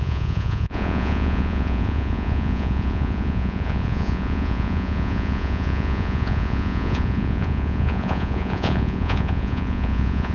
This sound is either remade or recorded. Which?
remade